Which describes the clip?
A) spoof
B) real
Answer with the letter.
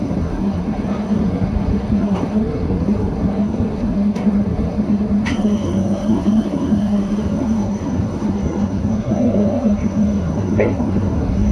A